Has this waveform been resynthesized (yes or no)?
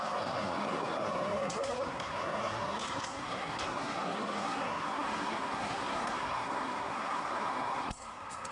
yes